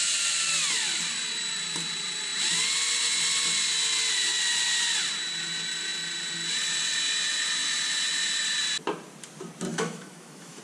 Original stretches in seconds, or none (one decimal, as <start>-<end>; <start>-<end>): 0.0-9.7